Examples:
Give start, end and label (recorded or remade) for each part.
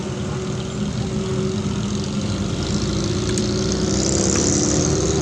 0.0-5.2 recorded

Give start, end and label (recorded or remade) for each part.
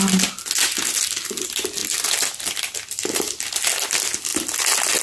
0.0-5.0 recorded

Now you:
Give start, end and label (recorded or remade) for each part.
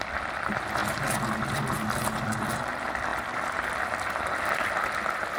0.0-3.1 recorded; 3.1-3.6 remade; 3.6-5.4 recorded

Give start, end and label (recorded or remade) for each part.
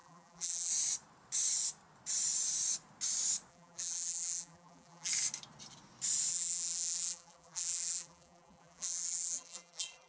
0.0-0.7 remade; 0.7-3.5 recorded; 3.5-5.1 remade; 5.1-6.3 recorded; 6.3-10.1 remade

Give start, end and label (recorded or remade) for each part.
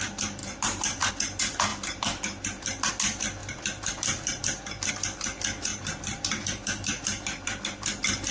0.0-0.4 recorded; 0.4-1.1 remade; 1.1-1.7 recorded; 1.7-2.9 remade; 2.9-3.4 recorded; 3.4-4.9 remade; 4.9-5.7 recorded; 5.7-7.6 remade; 7.6-8.3 recorded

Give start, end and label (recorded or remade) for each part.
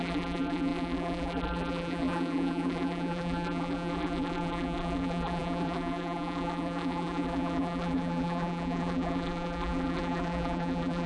0.0-11.1 remade